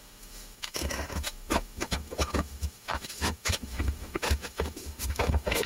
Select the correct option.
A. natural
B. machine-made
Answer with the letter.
B